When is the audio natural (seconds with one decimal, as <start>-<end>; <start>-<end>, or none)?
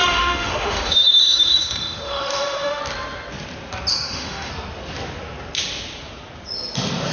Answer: 2.8-3.9; 4.5-7.1